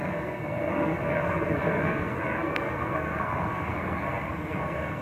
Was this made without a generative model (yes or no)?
no